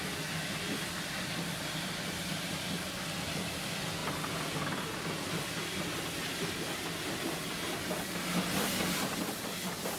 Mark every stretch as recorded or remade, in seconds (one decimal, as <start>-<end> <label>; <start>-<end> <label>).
0.0-10.0 recorded